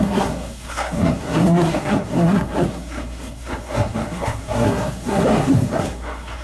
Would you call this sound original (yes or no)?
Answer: no